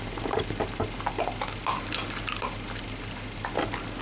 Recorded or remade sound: recorded